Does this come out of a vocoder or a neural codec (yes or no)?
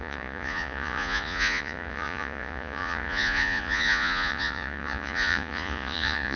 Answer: yes